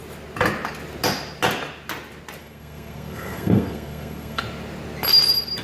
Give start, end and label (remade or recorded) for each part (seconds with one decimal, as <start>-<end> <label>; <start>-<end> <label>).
0.0-2.4 recorded; 2.4-4.4 remade; 4.4-5.6 recorded